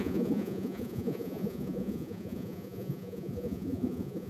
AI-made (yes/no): yes